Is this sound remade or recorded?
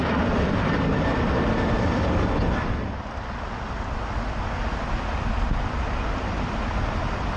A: recorded